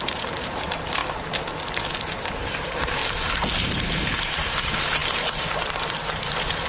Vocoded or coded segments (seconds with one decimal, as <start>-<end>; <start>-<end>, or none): 0.0-1.0; 2.0-3.0; 4.1-6.7